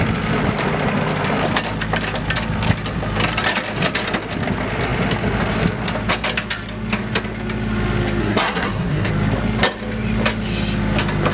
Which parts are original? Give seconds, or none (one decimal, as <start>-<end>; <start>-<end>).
0.0-8.2; 9.1-11.3